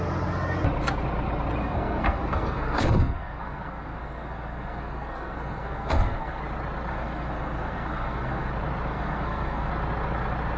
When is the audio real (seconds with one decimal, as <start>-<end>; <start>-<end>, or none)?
0.0-1.6; 6.4-6.9; 8.5-8.9; 9.7-10.6